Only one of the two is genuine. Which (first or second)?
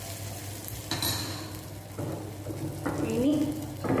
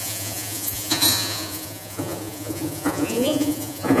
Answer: first